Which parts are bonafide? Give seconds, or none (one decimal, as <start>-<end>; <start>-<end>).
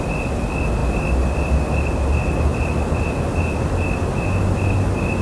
0.0-0.8; 1.4-5.2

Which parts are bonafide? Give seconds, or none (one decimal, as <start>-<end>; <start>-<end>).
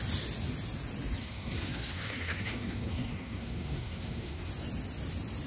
0.0-1.2; 4.5-5.5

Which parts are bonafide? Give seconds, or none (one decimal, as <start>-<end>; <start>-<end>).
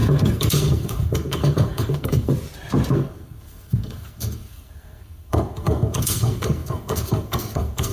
2.3-2.9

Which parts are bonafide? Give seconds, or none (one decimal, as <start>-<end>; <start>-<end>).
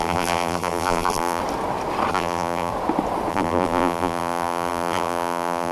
1.4-2.1; 2.7-3.3